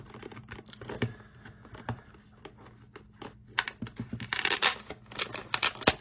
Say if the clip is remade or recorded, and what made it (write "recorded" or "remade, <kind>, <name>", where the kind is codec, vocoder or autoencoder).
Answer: recorded